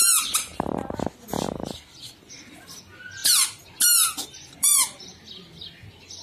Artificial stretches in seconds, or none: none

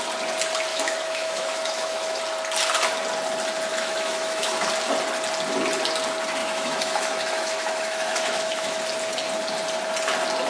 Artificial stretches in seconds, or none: 0.7-2.2 (autoencoder, DAC-VAE); 3.7-4.7; 6.4-8.8

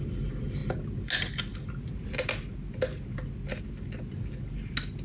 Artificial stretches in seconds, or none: none

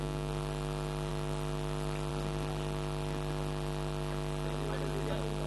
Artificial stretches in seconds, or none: none

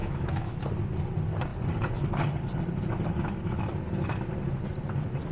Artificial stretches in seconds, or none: 0.0-0.6 (autoencoder, DAC-VAE)